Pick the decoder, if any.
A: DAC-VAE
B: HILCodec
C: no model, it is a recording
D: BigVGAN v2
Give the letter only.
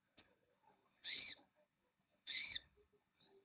B